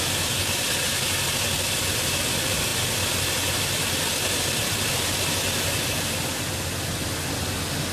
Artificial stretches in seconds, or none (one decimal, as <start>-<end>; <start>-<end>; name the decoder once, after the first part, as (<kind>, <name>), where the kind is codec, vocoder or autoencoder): none